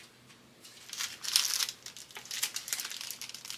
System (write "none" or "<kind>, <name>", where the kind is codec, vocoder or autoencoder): none